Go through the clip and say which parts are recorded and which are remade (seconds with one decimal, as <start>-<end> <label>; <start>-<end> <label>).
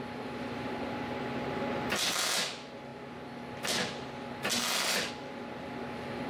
0.0-6.3 recorded